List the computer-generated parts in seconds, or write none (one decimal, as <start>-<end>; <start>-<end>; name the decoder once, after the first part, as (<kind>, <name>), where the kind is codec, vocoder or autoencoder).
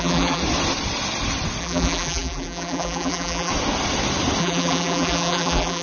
0.0-0.4 (vocoder, BigVGAN v2); 1.6-3.5; 4.4-5.8